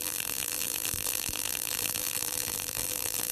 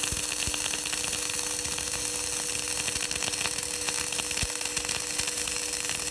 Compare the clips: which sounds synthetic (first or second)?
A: first